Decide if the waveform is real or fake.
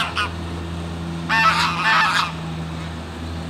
real